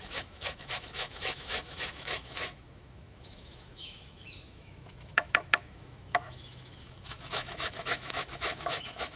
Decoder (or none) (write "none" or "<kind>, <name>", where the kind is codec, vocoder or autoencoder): autoencoder, DAC-VAE